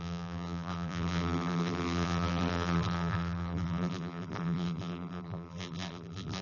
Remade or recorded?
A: remade